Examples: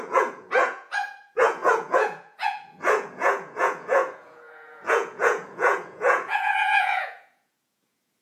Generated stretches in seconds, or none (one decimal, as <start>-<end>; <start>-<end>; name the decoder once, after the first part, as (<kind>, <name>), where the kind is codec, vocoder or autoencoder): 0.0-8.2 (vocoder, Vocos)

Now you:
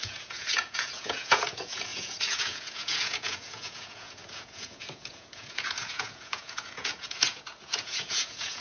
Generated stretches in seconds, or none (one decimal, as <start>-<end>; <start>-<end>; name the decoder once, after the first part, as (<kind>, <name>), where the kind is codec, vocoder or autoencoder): 0.0-8.6 (vocoder, Vocos)

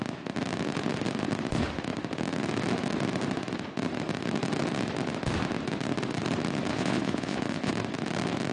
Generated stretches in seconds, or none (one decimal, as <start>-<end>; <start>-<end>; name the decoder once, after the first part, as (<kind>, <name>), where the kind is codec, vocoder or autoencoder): 6.7-7.7 (vocoder, Vocos)